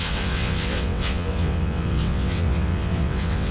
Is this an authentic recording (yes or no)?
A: no